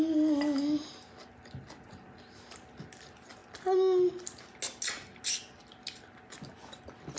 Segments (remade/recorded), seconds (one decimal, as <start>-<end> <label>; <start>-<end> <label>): 0.0-7.2 recorded